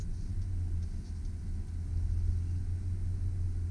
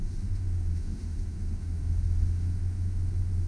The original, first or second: first